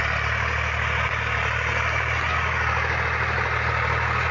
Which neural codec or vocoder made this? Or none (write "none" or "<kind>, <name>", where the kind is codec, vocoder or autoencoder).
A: none